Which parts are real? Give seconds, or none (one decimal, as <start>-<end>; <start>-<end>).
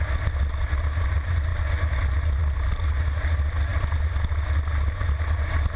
0.0-5.8